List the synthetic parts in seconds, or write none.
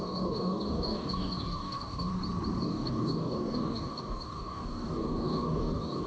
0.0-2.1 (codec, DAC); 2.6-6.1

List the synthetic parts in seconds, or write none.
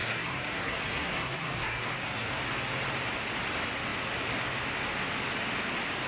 0.0-2.3 (codec, SNAC)